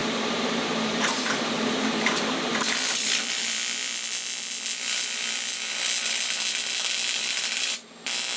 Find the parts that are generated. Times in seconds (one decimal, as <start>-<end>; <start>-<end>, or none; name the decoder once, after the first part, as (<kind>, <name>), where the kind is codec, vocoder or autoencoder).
0.0-2.7 (vocoder, BigVGAN v2)